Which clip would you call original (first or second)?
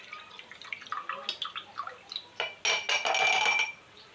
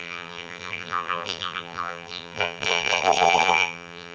first